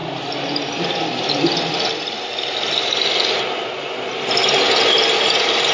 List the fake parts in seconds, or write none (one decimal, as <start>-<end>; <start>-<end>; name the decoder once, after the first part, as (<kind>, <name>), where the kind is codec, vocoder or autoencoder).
none